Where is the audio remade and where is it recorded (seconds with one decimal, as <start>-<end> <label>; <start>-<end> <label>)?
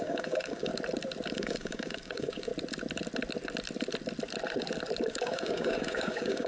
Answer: 0.0-0.7 remade; 0.7-1.3 recorded; 1.3-2.5 remade; 2.5-5.1 recorded; 5.1-6.5 remade